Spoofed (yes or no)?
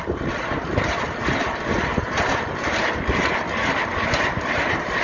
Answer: yes